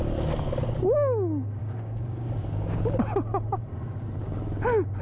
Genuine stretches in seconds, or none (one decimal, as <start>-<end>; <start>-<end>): 0.0-1.6; 2.8-5.0